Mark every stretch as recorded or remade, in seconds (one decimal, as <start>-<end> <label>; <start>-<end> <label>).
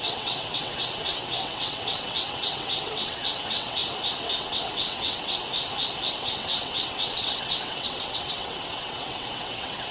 0.0-3.8 remade; 3.8-4.4 recorded; 4.4-5.4 remade; 5.4-6.1 recorded; 6.1-9.9 remade